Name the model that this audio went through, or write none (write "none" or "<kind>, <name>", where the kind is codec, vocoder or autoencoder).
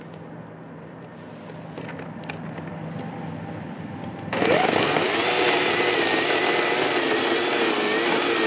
none